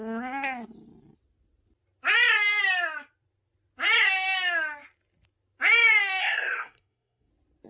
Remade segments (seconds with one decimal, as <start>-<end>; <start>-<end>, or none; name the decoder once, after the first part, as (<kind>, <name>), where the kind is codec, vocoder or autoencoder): 6.2-7.3 (codec, SNAC)